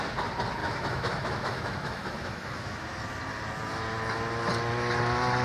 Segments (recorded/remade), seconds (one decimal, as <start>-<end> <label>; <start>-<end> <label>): 0.0-0.6 recorded; 0.6-3.0 remade; 3.0-5.4 recorded